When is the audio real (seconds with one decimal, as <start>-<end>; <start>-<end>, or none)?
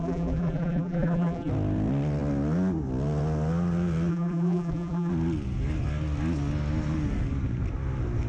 1.5-4.1; 5.1-8.3